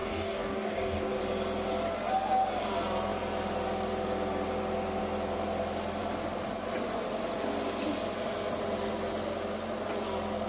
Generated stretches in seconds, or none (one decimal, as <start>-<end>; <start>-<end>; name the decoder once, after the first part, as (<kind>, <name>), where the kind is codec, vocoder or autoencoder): 0.0-1.2 (codec, DAC)